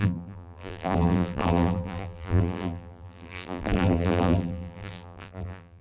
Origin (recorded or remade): remade